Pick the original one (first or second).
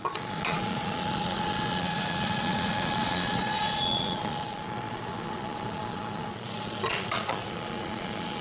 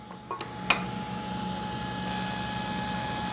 second